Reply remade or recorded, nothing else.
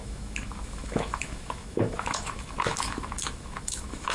remade